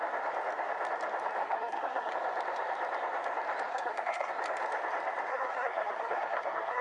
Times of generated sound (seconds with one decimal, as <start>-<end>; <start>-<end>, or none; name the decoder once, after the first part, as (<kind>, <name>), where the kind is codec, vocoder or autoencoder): 1.4-2.1 (codec, SNAC); 3.7-4.3; 5.3-6.8